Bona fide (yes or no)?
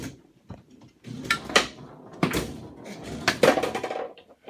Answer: yes